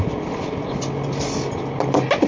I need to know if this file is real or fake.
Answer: real